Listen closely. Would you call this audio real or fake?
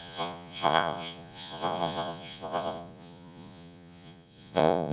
fake